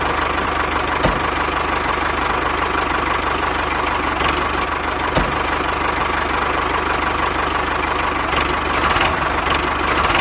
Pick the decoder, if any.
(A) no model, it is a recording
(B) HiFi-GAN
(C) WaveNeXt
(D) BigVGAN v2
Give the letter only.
A